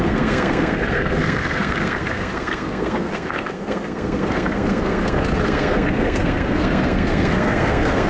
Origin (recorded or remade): remade